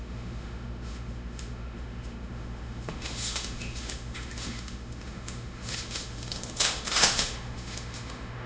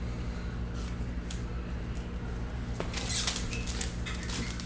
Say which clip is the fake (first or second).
first